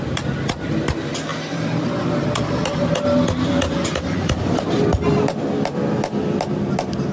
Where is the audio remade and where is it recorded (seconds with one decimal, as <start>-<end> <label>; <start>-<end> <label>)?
0.0-1.3 recorded; 1.3-2.8 remade; 2.8-7.1 recorded